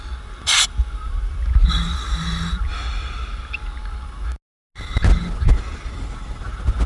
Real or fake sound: real